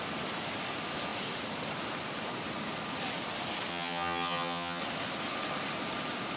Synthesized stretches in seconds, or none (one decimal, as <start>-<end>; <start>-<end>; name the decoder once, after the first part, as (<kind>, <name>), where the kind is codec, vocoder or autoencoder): 3.7-4.8 (vocoder, HiFi-GAN)